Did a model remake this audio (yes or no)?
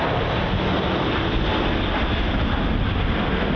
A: no